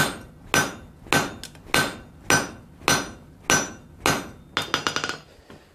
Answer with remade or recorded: recorded